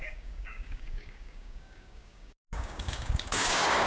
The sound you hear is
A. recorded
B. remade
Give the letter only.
B